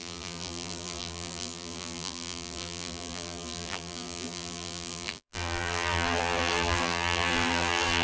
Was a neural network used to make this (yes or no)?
yes